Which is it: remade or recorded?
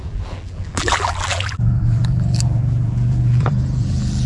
remade